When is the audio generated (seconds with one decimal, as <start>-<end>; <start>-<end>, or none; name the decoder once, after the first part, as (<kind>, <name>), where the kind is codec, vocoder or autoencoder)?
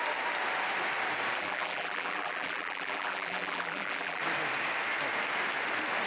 1.4-4.2 (vocoder, BigVGAN v2)